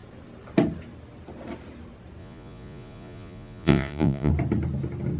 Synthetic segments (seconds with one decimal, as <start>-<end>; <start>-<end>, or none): 2.2-4.3